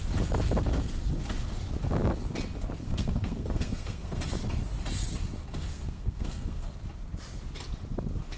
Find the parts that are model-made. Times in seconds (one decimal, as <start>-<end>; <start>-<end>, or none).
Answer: 2.8-4.2; 5.7-6.7